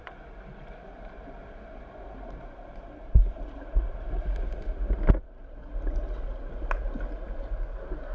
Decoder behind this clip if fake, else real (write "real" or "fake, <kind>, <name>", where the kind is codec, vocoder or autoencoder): real